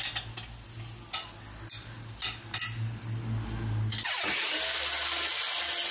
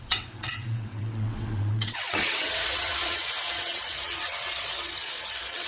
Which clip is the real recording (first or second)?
first